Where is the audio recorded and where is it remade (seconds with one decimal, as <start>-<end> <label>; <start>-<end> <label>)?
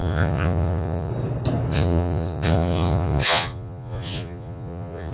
0.0-1.1 remade; 1.1-1.7 recorded; 1.7-5.1 remade